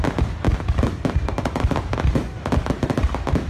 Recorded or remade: recorded